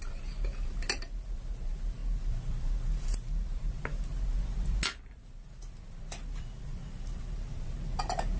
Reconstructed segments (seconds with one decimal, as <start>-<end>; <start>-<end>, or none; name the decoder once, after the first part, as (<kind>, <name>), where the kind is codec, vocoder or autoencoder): none